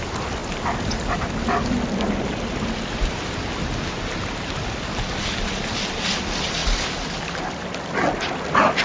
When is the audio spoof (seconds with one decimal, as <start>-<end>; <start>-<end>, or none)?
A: none